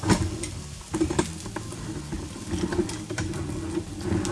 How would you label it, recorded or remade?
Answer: recorded